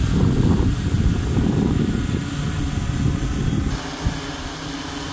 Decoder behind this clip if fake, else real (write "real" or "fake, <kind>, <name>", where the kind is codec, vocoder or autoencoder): real